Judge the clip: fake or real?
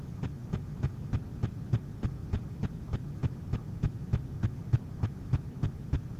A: real